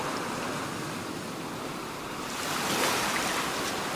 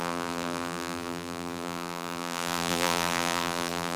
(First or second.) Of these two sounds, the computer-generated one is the second